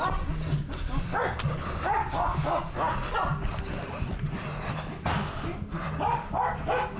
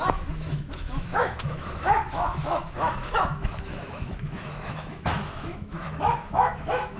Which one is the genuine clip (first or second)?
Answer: first